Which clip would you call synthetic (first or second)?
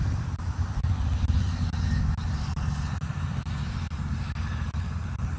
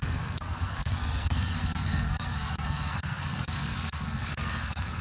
second